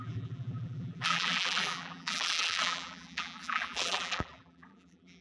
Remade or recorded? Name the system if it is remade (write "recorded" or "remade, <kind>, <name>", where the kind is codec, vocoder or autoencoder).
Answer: remade, vocoder, BigVGAN v2